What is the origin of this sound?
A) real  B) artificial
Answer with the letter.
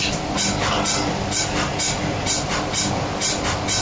A